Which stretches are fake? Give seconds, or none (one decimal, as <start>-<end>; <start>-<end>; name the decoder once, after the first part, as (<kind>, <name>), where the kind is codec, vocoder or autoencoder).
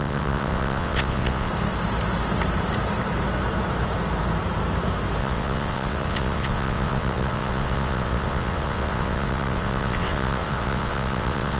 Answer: 0.0-1.5 (vocoder, WaveNeXt); 5.2-11.6